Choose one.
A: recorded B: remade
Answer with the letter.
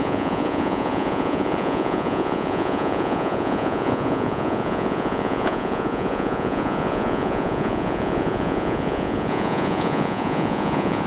B